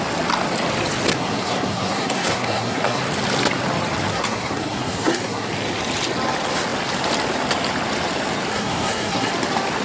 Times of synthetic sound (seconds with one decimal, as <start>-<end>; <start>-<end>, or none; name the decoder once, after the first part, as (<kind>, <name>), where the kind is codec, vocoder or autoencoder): 1.1-3.0 (codec, SNAC); 4.1-5.5; 8.5-9.3